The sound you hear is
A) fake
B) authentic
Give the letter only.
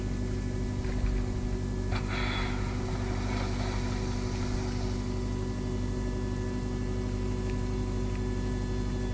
B